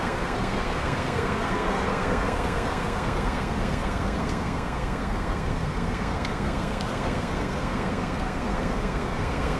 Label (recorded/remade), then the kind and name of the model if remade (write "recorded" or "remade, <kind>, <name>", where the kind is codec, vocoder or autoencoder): remade, codec, SNAC